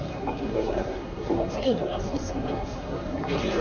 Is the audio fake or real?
fake